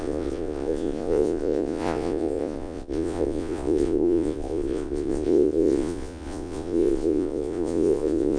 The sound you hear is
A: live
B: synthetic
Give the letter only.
B